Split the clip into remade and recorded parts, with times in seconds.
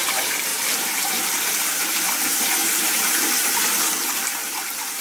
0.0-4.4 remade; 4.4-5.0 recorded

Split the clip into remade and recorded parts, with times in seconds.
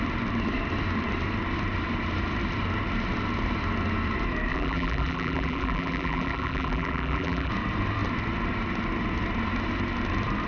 0.0-4.5 recorded; 4.5-7.5 remade; 7.5-10.5 recorded